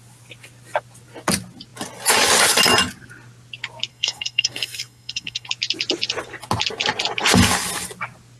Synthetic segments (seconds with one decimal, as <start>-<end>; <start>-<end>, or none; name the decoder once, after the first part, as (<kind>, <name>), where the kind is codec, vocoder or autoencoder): 3.9-5.5 (codec, SNAC)